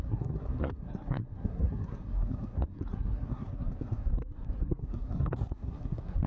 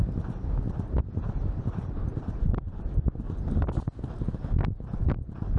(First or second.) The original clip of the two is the second